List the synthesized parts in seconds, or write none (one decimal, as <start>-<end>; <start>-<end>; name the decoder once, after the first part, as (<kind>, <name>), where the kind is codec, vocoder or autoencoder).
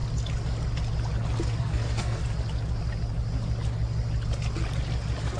1.6-2.2 (codec, SNAC)